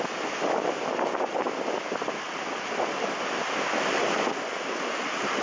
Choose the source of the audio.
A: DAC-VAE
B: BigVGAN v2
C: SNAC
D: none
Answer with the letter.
D